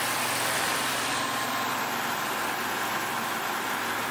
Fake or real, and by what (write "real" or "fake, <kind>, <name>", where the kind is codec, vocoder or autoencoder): real